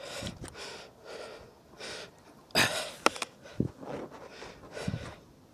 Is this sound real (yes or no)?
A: yes